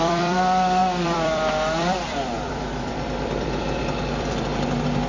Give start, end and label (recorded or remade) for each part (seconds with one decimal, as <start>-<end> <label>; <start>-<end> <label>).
0.0-5.1 remade